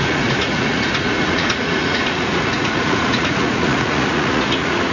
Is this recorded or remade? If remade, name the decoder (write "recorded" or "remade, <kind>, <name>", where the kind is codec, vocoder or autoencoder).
remade, vocoder, Vocos